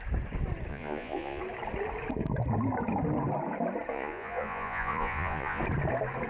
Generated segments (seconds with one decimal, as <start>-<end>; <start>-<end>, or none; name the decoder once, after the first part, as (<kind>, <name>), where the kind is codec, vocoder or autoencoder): 0.7-1.4 (vocoder, Vocos); 3.9-5.6